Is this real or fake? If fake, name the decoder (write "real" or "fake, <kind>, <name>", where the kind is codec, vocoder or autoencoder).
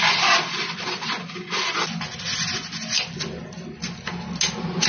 real